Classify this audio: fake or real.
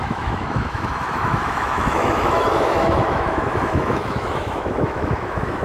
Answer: fake